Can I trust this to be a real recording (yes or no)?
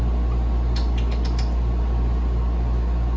yes